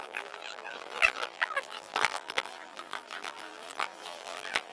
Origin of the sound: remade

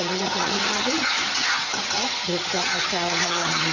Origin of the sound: remade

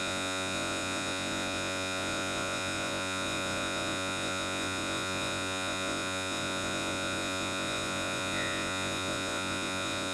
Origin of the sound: remade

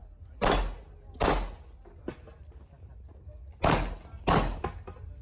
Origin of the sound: recorded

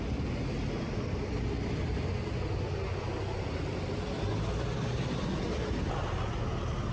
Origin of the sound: recorded